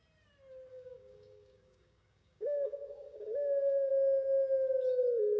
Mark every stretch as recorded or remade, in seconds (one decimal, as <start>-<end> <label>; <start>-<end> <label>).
0.0-0.7 recorded; 0.7-3.9 remade; 3.9-5.4 recorded